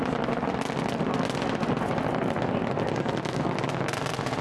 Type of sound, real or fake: real